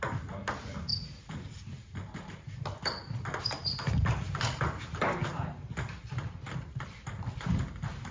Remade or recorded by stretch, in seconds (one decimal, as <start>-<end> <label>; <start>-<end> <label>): 0.0-8.1 recorded